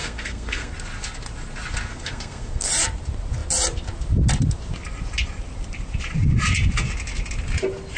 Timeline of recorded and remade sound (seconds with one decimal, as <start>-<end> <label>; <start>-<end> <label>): 0.0-0.7 remade; 0.7-1.9 recorded; 1.9-2.7 remade; 2.7-8.0 recorded